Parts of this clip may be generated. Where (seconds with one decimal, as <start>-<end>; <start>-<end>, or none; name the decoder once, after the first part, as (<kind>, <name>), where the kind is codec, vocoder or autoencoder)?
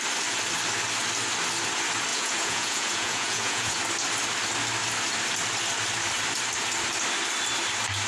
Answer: 2.1-3.8 (vocoder, Vocos)